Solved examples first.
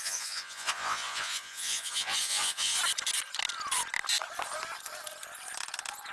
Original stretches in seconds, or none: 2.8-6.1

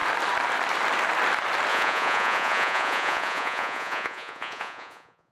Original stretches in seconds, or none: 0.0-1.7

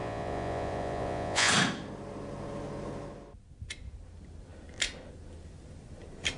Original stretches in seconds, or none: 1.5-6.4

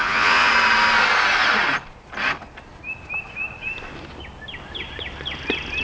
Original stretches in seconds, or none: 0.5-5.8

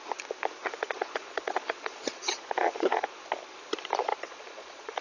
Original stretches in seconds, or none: 0.0-0.6; 3.1-4.1

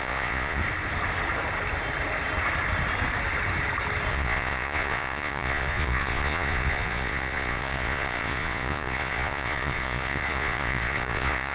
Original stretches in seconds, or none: 0.6-4.1

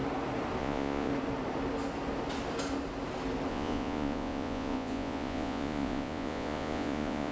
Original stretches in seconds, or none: 0.0-0.6; 1.1-3.5